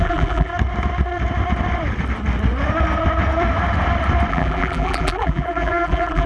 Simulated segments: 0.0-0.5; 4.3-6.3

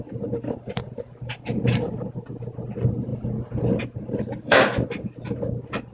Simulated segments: 0.0-3.1; 3.8-5.9

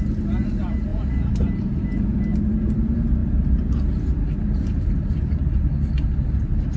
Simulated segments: 0.9-2.2

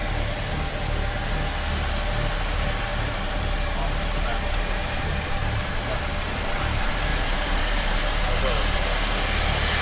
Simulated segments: 2.9-6.6; 7.1-8.4

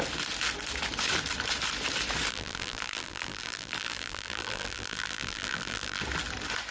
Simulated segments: 2.3-6.0

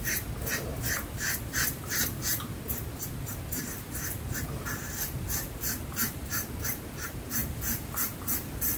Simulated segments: 7.4-8.8